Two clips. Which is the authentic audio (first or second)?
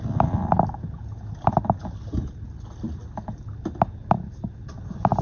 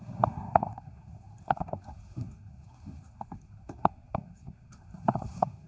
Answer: first